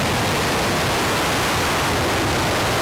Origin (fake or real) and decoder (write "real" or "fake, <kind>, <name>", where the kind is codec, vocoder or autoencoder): real